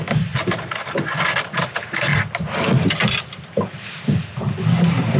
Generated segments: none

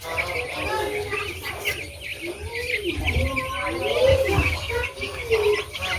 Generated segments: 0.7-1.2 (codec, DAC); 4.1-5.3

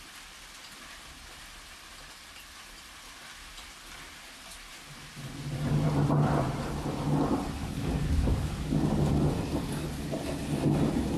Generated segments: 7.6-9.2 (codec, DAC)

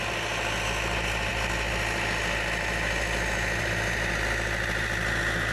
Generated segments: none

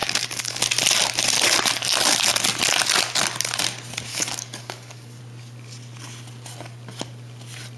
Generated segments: 0.0-0.6 (codec, DAC); 4.1-5.2